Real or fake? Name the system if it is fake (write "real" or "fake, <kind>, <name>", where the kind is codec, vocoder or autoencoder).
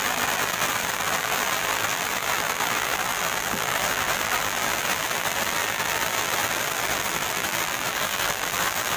fake, vocoder, BigVGAN v2